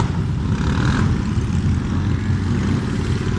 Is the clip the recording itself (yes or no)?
yes